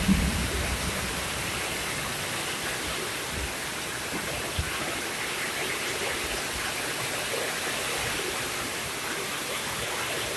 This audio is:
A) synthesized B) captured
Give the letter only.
B